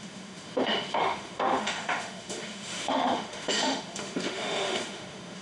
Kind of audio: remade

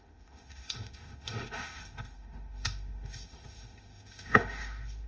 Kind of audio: remade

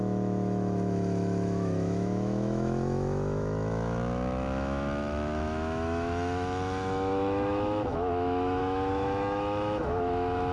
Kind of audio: remade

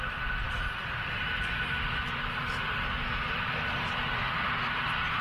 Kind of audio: recorded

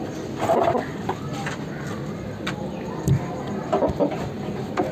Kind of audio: recorded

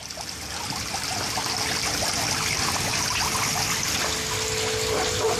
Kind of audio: recorded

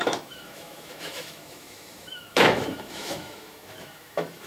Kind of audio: remade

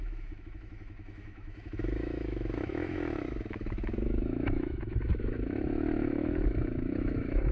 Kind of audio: remade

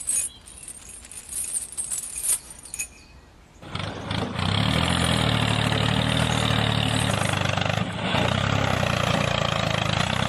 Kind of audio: recorded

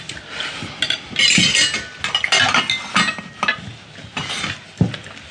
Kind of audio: recorded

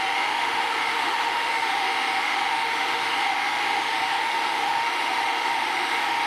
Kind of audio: remade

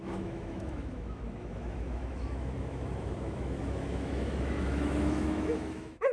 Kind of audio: remade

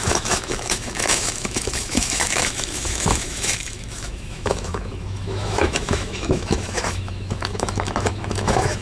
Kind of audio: remade